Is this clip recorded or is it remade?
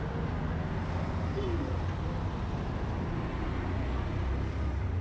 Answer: recorded